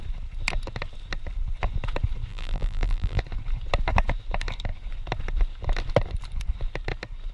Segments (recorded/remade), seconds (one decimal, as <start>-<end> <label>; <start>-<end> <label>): 0.0-2.3 recorded; 2.3-3.2 remade; 3.2-7.3 recorded